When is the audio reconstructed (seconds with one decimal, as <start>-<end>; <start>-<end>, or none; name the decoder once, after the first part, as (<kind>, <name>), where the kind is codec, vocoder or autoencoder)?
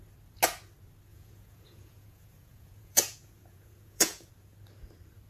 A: 1.1-4.3 (vocoder, Vocos)